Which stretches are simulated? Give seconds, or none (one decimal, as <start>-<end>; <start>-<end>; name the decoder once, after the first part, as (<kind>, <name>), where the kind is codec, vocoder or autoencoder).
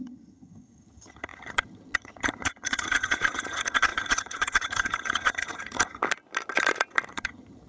0.0-6.0 (vocoder, HiFi-GAN); 7.1-7.7